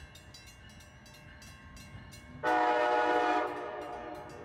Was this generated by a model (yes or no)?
no